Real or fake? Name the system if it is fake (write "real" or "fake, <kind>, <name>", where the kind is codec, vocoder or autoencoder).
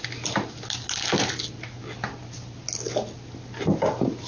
real